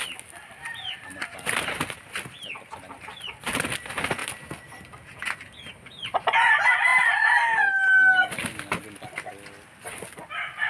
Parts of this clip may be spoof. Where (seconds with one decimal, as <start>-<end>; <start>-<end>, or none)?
none